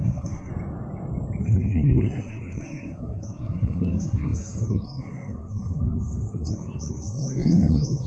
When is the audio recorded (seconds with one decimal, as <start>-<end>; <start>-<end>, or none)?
0.5-1.4